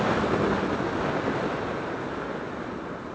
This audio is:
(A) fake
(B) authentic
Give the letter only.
B